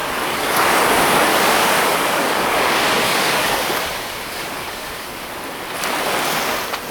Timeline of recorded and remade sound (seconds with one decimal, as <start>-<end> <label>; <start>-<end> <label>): 0.0-0.7 remade; 0.7-1.3 recorded; 1.3-5.3 remade; 5.3-6.9 recorded